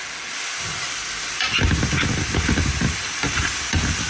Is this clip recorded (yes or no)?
yes